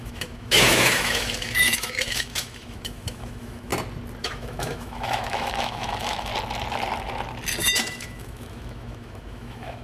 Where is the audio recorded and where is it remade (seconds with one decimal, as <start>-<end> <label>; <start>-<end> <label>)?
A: 0.0-3.7 remade; 3.7-4.2 recorded; 4.2-6.3 remade; 6.3-7.6 recorded; 7.6-9.8 remade